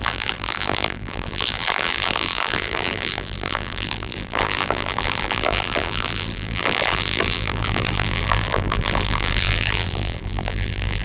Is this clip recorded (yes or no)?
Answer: no